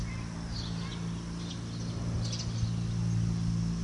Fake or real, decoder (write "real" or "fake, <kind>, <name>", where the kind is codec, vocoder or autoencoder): real